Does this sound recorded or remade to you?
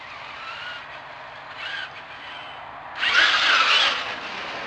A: recorded